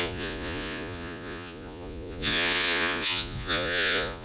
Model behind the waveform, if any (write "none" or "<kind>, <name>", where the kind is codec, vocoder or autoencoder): vocoder, Vocos